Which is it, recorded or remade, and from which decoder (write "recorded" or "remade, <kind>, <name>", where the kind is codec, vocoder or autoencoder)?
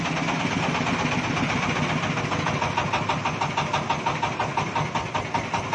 recorded